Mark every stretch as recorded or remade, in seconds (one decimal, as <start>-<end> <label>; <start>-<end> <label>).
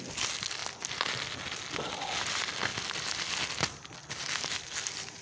0.0-5.2 recorded